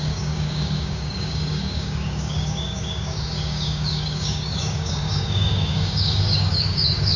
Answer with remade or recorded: remade